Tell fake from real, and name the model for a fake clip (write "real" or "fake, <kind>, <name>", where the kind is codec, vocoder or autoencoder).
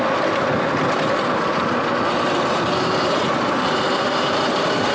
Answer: real